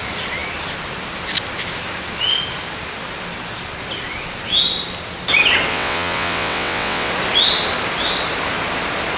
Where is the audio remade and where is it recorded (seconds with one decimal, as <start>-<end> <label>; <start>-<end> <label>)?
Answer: 0.0-5.7 recorded; 5.7-7.1 remade; 7.1-9.2 recorded